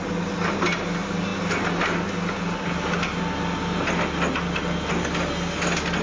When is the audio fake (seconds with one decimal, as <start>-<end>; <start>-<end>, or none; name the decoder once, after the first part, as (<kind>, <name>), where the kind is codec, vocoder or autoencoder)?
none